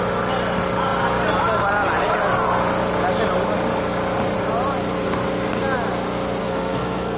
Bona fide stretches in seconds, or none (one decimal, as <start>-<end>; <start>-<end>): 0.0-6.4